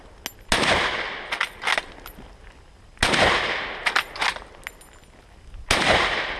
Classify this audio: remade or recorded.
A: recorded